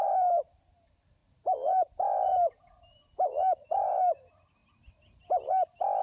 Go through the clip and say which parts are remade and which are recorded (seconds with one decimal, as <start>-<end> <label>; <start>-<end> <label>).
0.0-1.2 recorded; 1.2-4.1 remade; 4.1-4.6 recorded; 4.6-5.5 remade; 5.5-6.0 recorded